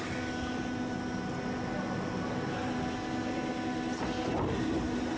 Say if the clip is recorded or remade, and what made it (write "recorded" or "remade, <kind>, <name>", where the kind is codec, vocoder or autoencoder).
recorded